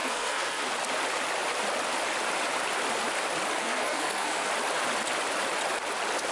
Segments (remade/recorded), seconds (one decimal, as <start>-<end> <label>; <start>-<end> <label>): 0.0-0.7 remade; 0.7-3.6 recorded; 3.6-4.5 remade; 4.5-6.3 recorded

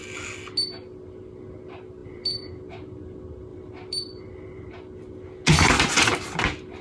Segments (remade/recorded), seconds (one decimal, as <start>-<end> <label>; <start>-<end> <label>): 0.0-2.0 recorded; 2.0-2.5 remade; 2.5-3.5 recorded; 3.5-4.7 remade; 4.7-6.8 recorded

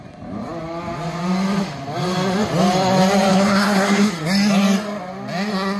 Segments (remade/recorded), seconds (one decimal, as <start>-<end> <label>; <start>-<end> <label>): 0.0-3.3 recorded; 3.3-4.1 remade; 4.1-5.8 recorded

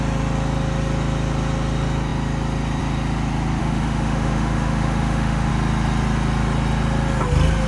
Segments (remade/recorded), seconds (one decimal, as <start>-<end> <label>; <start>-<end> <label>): 0.0-3.6 recorded; 3.6-5.5 remade; 5.5-7.7 recorded

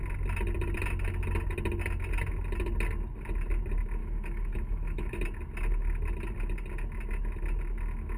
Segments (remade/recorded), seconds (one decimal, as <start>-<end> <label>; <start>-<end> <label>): 0.0-4.0 recorded; 4.0-5.2 remade; 5.2-8.2 recorded

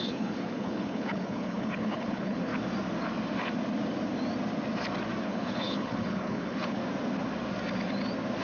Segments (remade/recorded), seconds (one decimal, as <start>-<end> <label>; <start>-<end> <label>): 0.0-2.5 remade; 2.5-5.2 recorded; 5.2-6.8 remade; 6.8-8.4 recorded

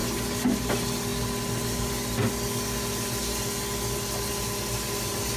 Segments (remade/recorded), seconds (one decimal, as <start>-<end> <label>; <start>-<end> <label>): 0.0-0.7 remade; 0.7-5.4 recorded